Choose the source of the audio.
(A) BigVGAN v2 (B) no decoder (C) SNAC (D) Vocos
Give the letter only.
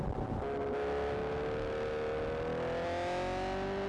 B